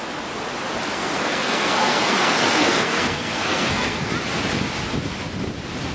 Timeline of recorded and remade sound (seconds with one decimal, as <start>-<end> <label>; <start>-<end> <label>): 0.0-0.9 recorded; 0.9-4.1 remade; 4.1-5.9 recorded